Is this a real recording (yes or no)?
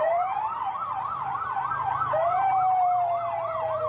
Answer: no